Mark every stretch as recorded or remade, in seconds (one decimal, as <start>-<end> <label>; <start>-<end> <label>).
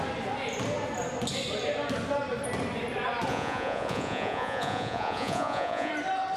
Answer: 0.0-3.3 recorded; 3.3-5.9 remade; 5.9-6.4 recorded